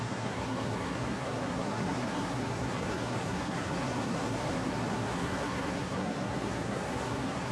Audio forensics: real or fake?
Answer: fake